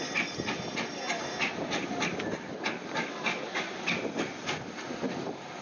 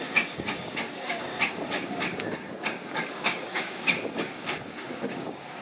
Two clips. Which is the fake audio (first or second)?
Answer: second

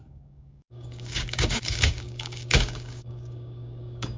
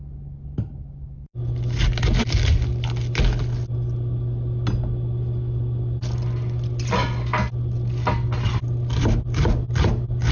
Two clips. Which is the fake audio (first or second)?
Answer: first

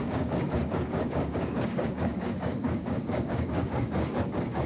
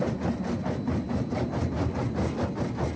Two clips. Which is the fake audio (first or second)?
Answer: first